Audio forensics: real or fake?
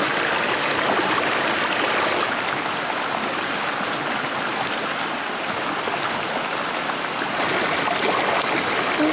real